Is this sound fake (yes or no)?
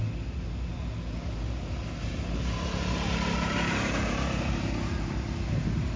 no